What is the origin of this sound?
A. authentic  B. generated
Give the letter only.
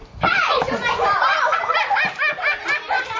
A